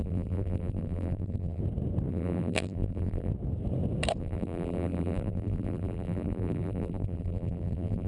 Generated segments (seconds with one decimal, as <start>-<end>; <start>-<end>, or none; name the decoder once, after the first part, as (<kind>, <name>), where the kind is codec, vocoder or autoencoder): 0.0-1.6 (vocoder, BigVGAN v2); 2.1-3.3; 4.2-8.1